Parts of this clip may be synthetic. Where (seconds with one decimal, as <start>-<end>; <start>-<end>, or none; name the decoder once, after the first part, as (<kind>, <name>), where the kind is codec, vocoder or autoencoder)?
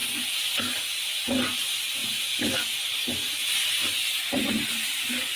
0.0-5.4 (vocoder, BigVGAN v2)